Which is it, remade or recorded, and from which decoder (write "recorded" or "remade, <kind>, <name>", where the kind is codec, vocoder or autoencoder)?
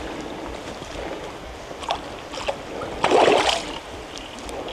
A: recorded